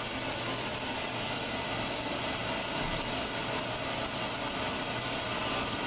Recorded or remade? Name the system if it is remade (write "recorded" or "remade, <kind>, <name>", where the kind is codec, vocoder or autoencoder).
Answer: recorded